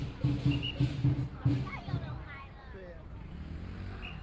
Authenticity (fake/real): fake